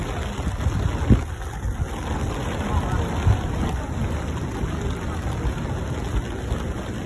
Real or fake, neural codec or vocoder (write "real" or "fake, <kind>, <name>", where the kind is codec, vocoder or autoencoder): real